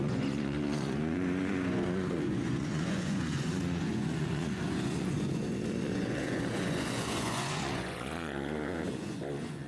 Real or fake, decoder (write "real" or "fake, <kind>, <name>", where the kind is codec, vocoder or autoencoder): fake, vocoder, Vocos